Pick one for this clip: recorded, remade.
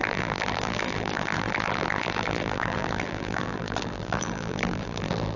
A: remade